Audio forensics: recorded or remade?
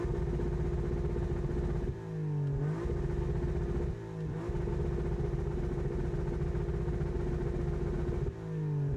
recorded